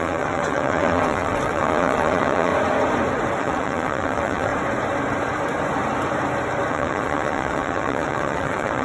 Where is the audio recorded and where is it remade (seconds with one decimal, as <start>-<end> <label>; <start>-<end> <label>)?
0.0-2.5 remade; 2.5-3.4 recorded; 3.4-4.5 remade; 4.5-6.7 recorded; 6.7-8.8 remade